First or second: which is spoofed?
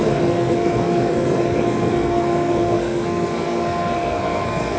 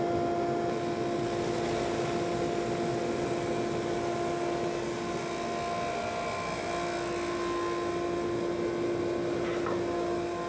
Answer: first